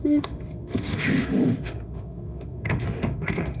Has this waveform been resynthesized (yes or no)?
yes